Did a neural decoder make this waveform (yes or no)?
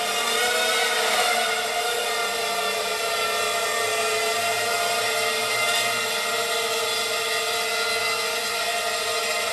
no